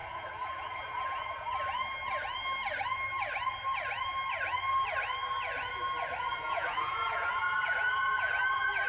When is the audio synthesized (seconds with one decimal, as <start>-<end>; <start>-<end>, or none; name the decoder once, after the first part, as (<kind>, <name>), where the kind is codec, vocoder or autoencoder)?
0.0-1.5 (vocoder, Vocos); 6.3-8.9